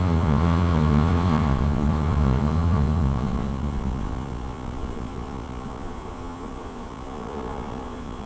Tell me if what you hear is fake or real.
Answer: fake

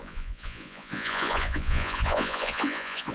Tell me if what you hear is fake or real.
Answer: fake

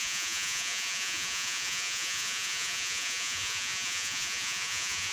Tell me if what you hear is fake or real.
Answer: fake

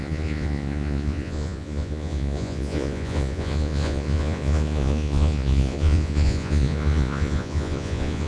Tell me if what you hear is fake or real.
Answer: fake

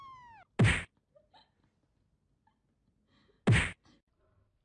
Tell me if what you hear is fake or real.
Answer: real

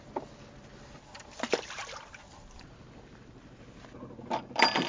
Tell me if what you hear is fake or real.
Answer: real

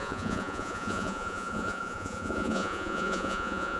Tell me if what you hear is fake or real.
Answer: fake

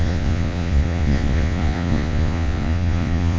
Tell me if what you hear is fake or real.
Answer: fake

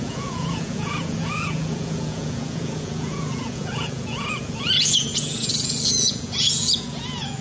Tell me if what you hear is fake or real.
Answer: fake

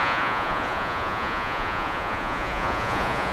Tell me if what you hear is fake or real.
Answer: fake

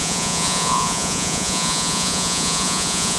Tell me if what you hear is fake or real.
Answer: fake